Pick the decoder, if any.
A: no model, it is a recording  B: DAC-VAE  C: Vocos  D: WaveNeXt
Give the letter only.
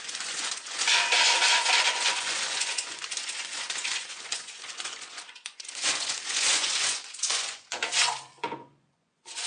C